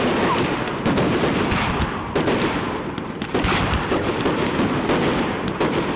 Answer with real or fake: real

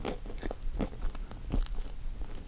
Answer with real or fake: real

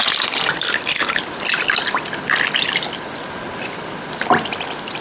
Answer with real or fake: real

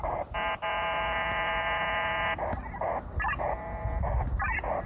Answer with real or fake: real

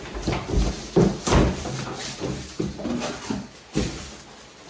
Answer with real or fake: real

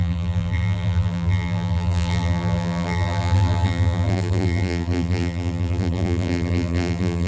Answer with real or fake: fake